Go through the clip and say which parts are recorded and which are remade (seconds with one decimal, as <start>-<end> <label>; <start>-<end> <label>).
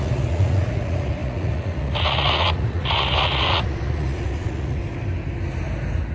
0.0-4.8 remade; 4.8-6.1 recorded